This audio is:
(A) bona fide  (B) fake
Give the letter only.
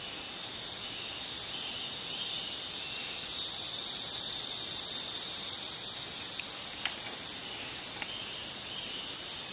A